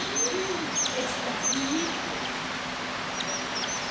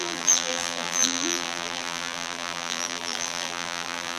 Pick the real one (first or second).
first